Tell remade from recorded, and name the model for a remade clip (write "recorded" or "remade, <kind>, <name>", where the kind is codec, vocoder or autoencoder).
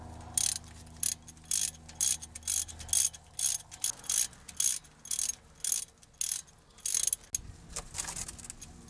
recorded